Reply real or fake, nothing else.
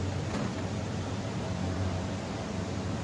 fake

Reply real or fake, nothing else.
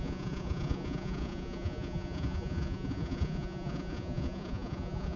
fake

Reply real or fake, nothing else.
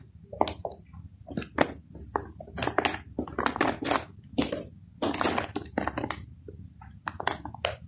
real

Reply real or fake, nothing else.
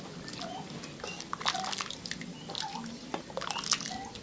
real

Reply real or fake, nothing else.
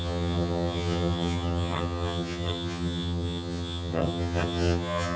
fake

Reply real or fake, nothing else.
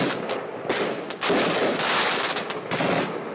real